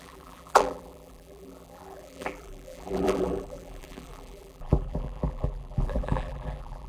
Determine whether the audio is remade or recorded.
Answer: remade